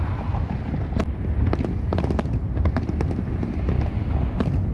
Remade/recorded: remade